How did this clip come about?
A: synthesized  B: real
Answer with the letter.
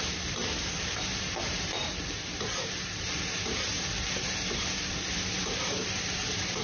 A